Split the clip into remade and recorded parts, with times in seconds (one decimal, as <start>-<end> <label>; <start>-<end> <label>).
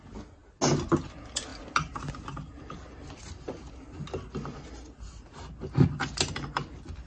0.0-7.1 recorded